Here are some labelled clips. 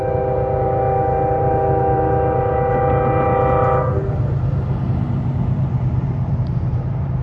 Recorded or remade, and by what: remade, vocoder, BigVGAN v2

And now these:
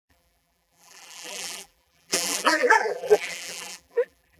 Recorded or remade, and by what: remade, vocoder, BigVGAN v2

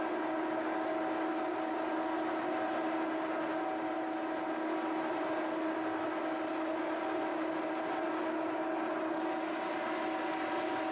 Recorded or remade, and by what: recorded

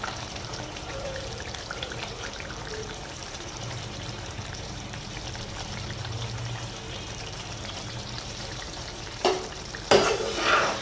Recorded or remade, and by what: remade, vocoder, BigVGAN v2